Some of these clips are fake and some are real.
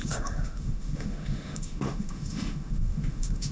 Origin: fake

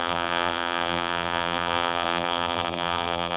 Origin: fake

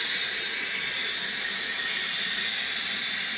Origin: real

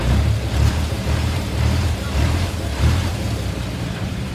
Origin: fake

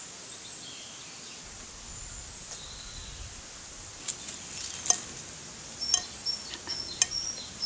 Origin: real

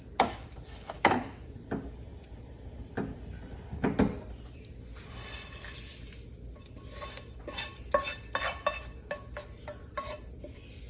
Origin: real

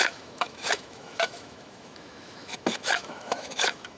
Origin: fake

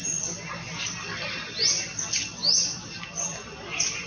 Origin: real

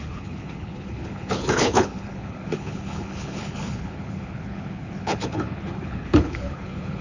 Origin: fake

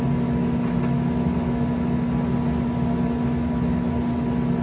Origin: real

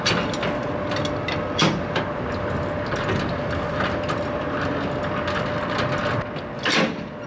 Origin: real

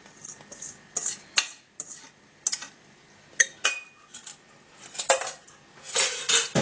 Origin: real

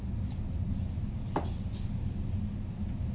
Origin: real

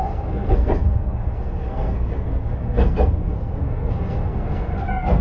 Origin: fake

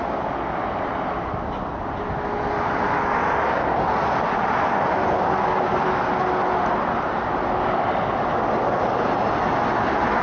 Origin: real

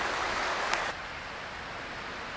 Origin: real